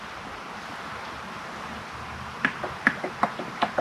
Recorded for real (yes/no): yes